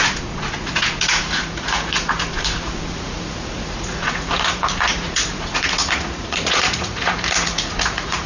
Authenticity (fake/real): fake